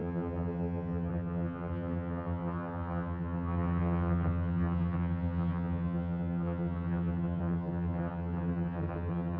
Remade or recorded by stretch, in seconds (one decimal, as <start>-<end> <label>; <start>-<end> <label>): 0.0-9.4 remade